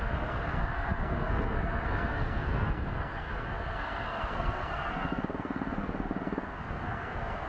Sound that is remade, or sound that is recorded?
remade